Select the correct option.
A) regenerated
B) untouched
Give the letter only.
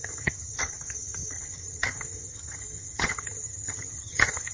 A